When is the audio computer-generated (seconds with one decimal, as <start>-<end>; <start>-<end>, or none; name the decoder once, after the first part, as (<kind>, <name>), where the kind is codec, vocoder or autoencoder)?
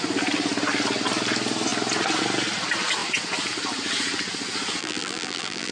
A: 4.8-5.7 (vocoder, BigVGAN v2)